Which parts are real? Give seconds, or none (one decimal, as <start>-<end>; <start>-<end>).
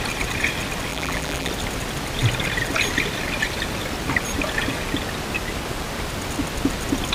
0.0-0.9; 1.5-7.1